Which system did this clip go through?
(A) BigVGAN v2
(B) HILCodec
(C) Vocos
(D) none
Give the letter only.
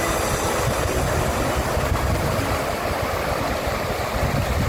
A